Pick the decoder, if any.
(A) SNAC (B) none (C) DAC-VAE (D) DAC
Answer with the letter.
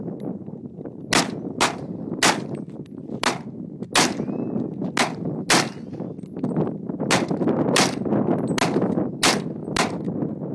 B